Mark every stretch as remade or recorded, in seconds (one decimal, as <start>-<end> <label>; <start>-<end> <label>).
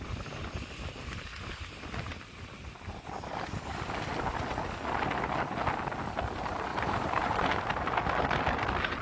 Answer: 0.0-6.7 recorded; 6.7-7.7 remade; 7.7-9.0 recorded